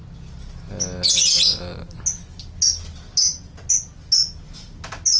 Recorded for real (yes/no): yes